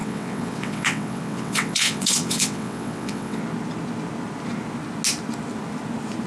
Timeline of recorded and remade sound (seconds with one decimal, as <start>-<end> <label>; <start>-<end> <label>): 0.0-3.4 remade; 3.4-6.3 recorded